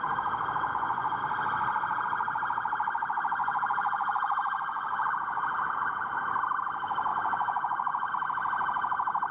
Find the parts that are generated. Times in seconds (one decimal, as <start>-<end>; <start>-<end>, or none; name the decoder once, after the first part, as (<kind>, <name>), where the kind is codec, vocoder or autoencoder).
0.7-1.2 (vocoder, Vocos); 3.4-5.2; 7.1-8.1